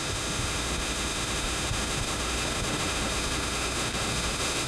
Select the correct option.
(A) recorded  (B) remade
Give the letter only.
B